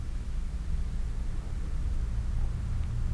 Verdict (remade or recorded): recorded